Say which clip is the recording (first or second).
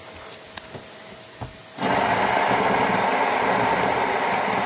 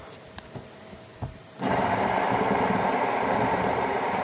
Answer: first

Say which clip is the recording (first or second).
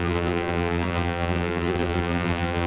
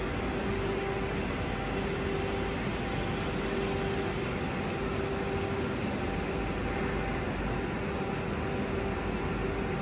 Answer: second